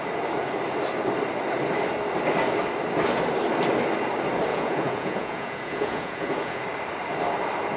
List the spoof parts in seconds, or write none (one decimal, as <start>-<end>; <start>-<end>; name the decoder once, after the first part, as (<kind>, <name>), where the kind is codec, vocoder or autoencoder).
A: 4.5-6.6 (vocoder, Vocos)